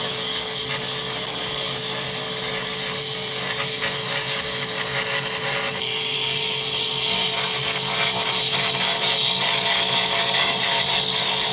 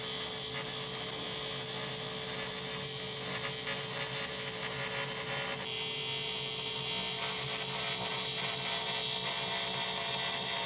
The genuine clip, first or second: second